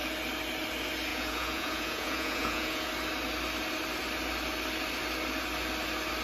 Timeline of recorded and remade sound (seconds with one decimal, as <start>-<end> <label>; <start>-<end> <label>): 0.0-1.1 recorded; 1.1-2.9 remade; 2.9-6.2 recorded